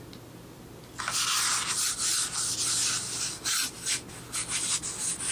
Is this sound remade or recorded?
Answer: recorded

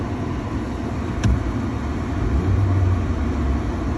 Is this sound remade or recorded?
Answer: recorded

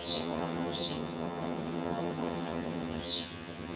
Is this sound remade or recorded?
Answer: remade